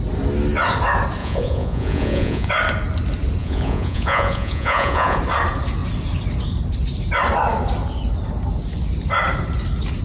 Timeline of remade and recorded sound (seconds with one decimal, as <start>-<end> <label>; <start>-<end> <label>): 0.0-1.2 recorded; 1.2-2.5 remade; 2.5-3.4 recorded; 3.4-5.2 remade; 5.2-10.0 recorded